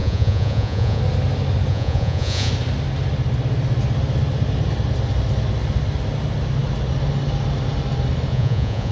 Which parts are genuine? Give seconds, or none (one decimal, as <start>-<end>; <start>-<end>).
1.0-1.7; 2.5-8.3